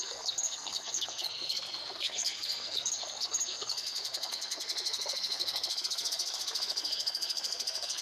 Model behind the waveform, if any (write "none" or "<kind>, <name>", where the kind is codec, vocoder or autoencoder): codec, SNAC